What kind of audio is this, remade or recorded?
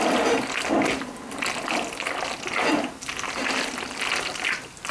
recorded